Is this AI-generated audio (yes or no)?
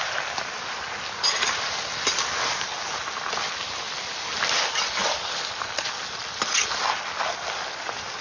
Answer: no